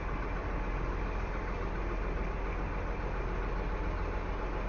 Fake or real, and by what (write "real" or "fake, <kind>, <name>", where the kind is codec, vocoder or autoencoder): real